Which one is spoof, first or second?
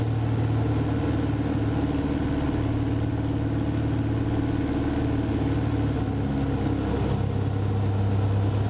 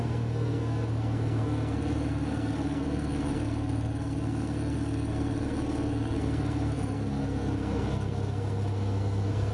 second